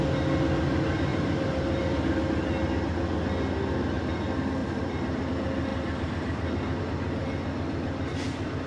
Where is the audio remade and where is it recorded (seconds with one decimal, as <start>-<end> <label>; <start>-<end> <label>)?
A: 0.0-1.1 recorded; 1.1-2.0 remade; 2.0-4.6 recorded; 4.6-5.3 remade; 5.3-5.7 recorded; 5.7-6.8 remade; 6.8-8.7 recorded